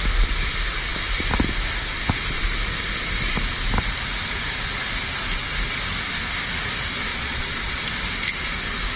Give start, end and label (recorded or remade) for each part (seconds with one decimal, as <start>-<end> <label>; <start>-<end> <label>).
0.0-7.1 recorded; 7.1-7.8 remade; 7.8-9.0 recorded